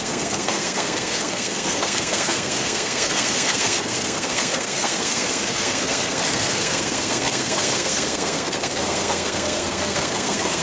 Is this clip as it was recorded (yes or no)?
no